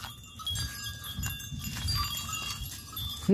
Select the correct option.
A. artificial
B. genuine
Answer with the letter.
B